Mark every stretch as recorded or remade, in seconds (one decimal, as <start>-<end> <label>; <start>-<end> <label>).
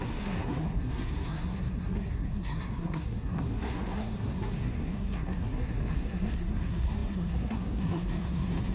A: 0.0-8.7 remade